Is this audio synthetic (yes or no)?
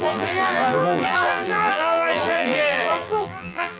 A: yes